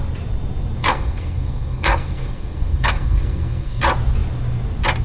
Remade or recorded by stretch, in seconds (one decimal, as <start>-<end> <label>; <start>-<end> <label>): 0.0-0.8 recorded; 0.8-3.8 remade; 3.8-5.0 recorded